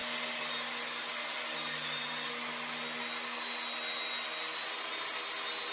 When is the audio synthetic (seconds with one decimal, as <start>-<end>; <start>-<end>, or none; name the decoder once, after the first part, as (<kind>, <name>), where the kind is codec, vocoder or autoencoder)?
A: none